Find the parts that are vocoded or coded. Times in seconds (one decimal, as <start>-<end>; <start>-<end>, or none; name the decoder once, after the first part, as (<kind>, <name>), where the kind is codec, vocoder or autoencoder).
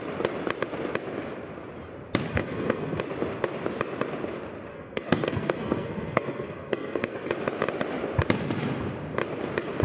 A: 2.3-3.0 (codec, SNAC); 4.7-7.3